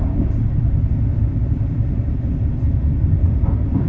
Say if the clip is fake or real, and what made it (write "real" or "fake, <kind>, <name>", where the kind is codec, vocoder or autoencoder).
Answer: fake, vocoder, BigVGAN v2